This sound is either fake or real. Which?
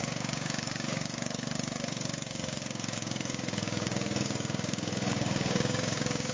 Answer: fake